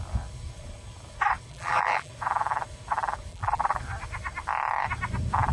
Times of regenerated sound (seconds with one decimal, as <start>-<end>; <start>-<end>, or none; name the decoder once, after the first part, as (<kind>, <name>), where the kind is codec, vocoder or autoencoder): 1.5-2.1 (vocoder, BigVGAN v2); 3.3-3.8